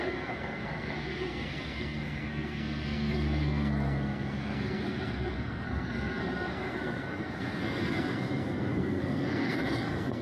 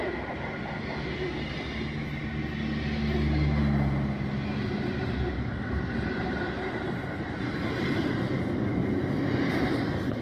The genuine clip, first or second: second